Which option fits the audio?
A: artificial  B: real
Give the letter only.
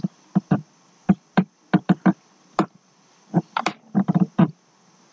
A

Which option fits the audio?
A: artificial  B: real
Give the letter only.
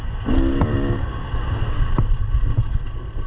B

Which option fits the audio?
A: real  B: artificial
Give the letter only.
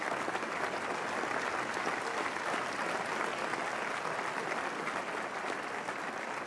A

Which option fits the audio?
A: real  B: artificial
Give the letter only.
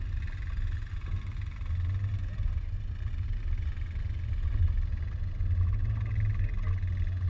A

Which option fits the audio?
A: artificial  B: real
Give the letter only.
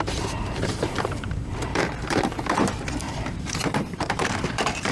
A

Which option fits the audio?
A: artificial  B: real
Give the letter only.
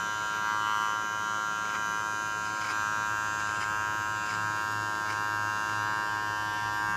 B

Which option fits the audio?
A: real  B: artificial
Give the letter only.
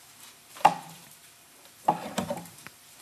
B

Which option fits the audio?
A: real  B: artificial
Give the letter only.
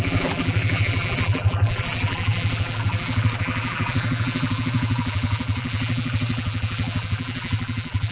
B